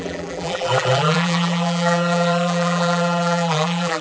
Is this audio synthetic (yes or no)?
yes